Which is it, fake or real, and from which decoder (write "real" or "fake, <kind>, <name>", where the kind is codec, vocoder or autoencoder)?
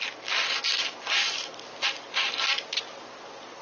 real